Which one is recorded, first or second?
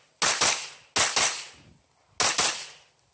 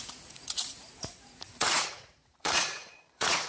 first